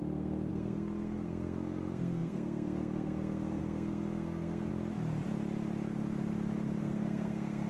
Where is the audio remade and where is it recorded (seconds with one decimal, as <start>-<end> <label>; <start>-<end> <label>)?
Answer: 0.0-4.7 remade; 4.7-6.8 recorded; 6.8-7.7 remade